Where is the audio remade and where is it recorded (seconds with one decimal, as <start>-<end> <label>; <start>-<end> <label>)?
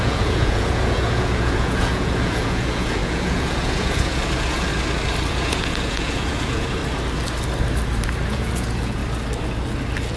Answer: 0.0-4.7 remade; 4.7-5.3 recorded; 5.3-6.8 remade; 6.8-8.3 recorded; 8.3-9.0 remade; 9.0-10.2 recorded